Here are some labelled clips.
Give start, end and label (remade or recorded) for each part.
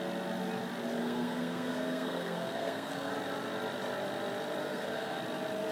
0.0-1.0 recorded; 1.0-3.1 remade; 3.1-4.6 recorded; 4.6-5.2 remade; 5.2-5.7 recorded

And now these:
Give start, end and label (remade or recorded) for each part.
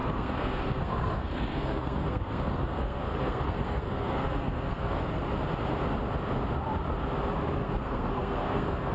0.0-5.2 remade; 5.2-7.6 recorded; 7.6-8.9 remade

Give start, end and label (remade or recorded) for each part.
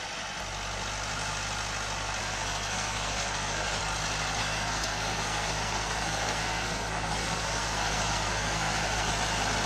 0.0-2.2 recorded; 2.2-3.8 remade; 3.8-4.4 recorded; 4.4-9.1 remade; 9.1-9.7 recorded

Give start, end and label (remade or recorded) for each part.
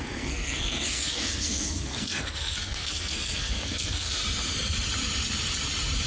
0.0-4.2 remade; 4.2-6.1 recorded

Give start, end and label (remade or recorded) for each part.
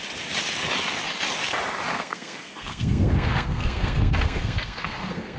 0.0-1.9 recorded; 1.9-5.4 remade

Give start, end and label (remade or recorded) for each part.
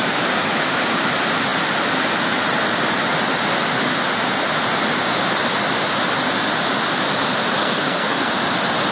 0.0-7.6 recorded; 7.6-8.3 remade; 8.3-8.9 recorded